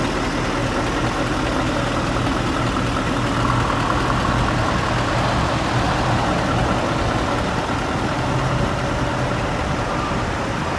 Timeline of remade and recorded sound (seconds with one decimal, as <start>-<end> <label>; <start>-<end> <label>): 0.0-10.8 recorded